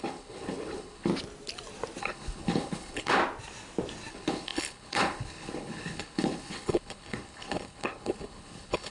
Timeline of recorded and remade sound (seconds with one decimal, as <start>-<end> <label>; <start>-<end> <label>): 0.0-1.1 remade; 1.1-2.0 recorded; 2.0-3.2 remade; 3.2-4.1 recorded; 4.1-8.9 remade